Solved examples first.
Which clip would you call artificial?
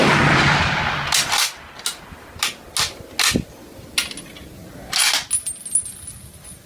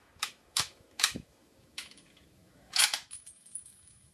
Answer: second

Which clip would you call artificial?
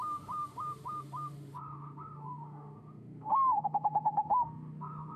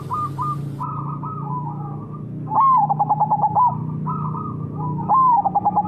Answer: first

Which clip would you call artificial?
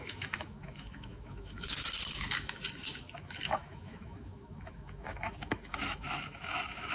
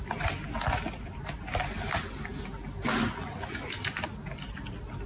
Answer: first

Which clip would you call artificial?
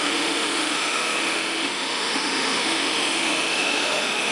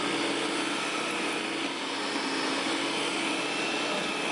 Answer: first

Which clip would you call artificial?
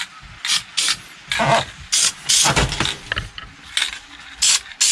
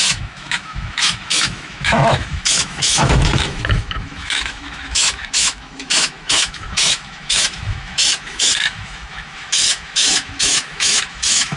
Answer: second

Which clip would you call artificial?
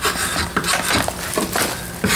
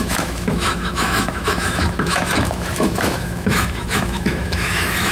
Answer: second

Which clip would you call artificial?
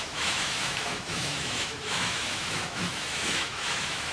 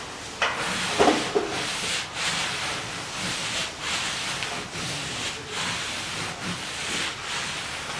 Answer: first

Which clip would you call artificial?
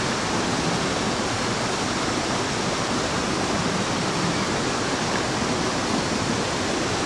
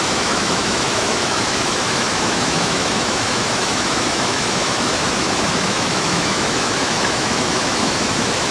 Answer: second